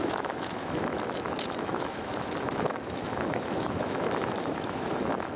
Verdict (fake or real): fake